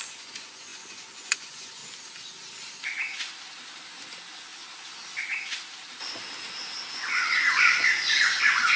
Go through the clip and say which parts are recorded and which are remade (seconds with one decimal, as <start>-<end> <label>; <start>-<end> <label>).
0.0-1.8 remade; 1.8-6.9 recorded; 6.9-8.8 remade